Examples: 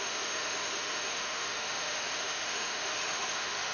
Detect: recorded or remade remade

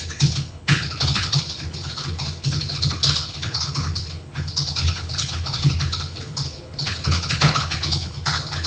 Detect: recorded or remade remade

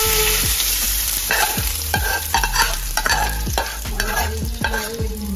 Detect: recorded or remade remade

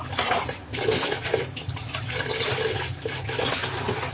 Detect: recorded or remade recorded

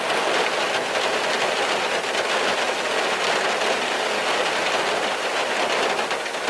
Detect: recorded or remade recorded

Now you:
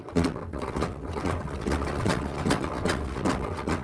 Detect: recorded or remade remade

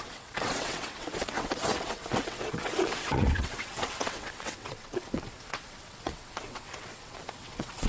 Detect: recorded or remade remade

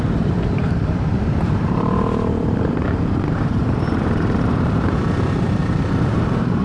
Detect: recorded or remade remade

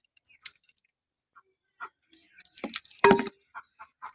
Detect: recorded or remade remade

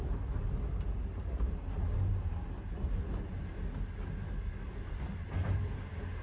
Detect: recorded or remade recorded